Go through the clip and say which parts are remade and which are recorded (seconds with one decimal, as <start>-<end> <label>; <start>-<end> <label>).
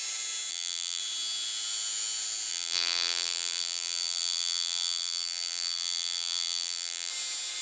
0.0-0.5 recorded; 0.5-1.0 remade; 1.0-2.5 recorded; 2.5-7.1 remade; 7.1-7.6 recorded